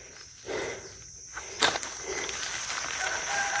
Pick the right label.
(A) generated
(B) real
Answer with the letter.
B